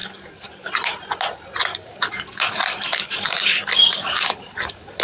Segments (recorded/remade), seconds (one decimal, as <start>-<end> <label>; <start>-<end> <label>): 0.0-0.7 remade; 0.7-1.7 recorded; 1.7-5.0 remade